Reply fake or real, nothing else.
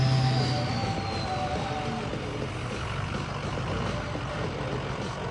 real